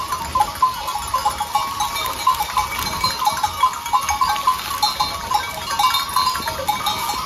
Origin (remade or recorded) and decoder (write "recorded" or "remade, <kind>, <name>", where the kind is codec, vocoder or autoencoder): recorded